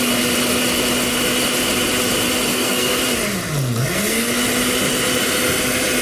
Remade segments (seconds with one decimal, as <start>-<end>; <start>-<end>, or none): 2.5-3.0; 3.8-4.3